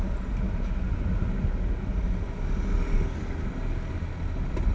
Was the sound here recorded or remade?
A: recorded